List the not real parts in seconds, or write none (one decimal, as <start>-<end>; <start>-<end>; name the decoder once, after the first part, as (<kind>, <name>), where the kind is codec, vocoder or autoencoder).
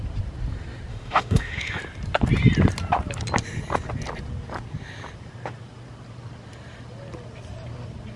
0.9-1.8 (autoencoder, DAC-VAE)